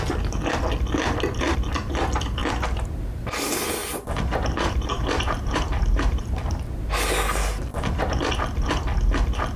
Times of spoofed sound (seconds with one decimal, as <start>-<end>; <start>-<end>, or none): 2.4-3.3; 3.8-6.9; 7.7-8.3